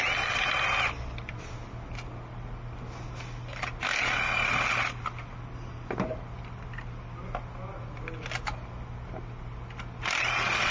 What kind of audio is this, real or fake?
real